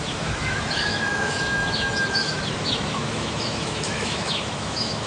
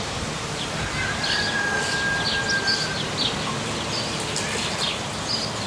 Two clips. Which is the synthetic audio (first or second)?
first